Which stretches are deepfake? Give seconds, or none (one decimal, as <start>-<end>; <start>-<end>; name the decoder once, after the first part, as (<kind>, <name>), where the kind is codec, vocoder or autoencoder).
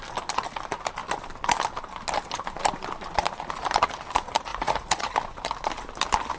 4.5-5.1 (vocoder, Vocos)